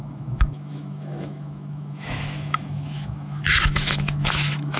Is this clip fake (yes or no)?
yes